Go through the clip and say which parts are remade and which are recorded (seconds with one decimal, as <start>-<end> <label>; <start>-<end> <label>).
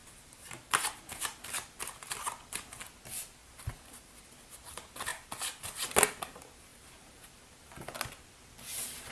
0.0-0.9 remade; 0.9-3.4 recorded; 3.4-4.2 remade; 4.2-6.7 recorded; 6.7-7.3 remade; 7.3-9.1 recorded